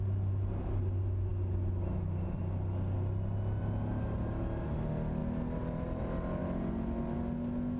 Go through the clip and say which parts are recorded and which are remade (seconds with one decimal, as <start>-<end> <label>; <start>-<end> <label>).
0.0-7.8 recorded